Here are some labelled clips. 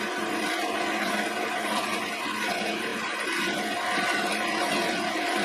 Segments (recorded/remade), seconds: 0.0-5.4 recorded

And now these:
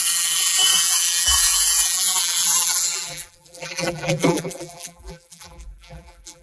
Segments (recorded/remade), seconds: 0.0-6.4 remade

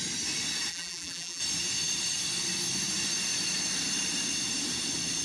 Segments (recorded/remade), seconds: 0.0-0.7 recorded; 0.7-1.4 remade; 1.4-5.2 recorded